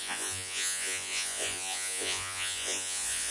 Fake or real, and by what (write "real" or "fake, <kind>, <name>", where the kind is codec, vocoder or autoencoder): fake, vocoder, Vocos